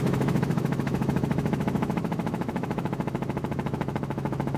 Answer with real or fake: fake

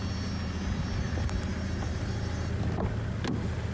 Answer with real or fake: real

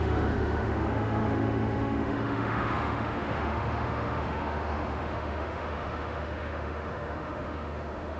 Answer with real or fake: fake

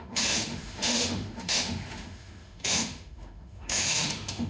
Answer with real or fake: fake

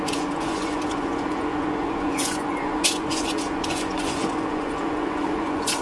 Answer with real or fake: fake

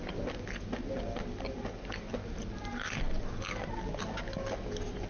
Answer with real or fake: real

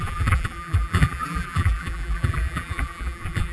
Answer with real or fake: fake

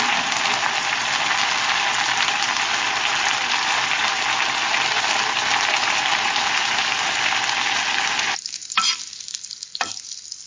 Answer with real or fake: real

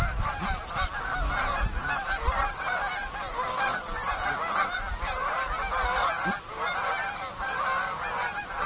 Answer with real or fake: real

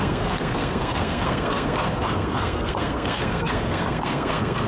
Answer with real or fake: fake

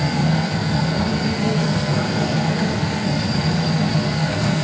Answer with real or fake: fake